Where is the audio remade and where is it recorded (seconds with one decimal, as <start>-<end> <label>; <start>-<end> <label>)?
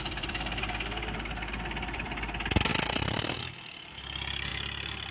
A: 0.0-2.7 remade; 2.7-3.4 recorded; 3.4-5.1 remade